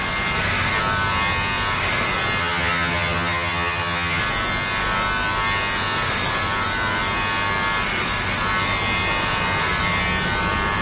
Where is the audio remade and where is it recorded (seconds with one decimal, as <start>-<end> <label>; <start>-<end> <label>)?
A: 0.0-2.4 recorded; 2.4-4.2 remade; 4.2-10.8 recorded